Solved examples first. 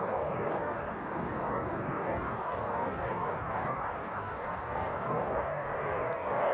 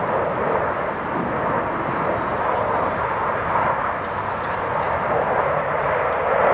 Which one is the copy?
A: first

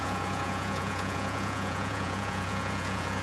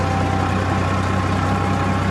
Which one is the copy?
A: first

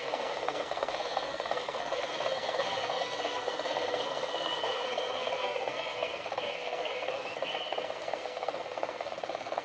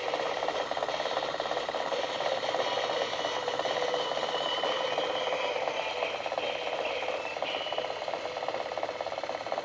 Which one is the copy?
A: first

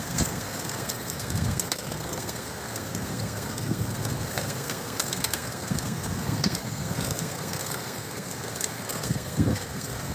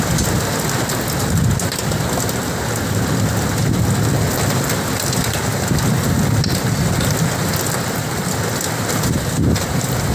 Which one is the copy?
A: first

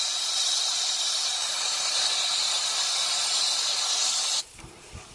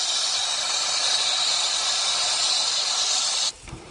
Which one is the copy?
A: second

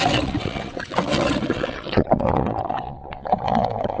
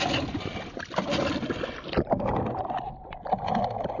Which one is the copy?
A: first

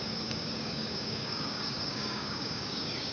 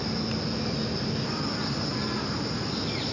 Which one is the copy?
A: first